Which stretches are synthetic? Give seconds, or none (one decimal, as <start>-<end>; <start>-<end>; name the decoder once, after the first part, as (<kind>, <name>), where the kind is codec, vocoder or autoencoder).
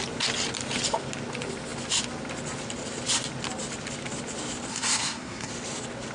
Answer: 4.7-5.5 (codec, SNAC)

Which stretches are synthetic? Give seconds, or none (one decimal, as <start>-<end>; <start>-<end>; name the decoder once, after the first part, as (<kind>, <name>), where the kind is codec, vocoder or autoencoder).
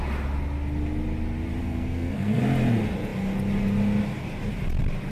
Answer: 1.6-2.4 (codec, SNAC)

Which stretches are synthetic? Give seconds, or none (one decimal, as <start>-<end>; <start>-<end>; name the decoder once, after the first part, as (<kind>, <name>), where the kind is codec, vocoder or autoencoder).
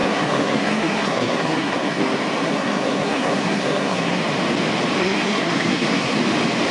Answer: 0.0-2.0 (codec, SNAC); 2.4-4.2; 5.0-6.2